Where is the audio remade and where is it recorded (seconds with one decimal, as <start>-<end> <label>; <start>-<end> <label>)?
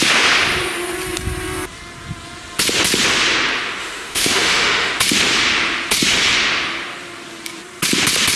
0.0-3.8 recorded; 3.8-4.9 remade; 4.9-8.4 recorded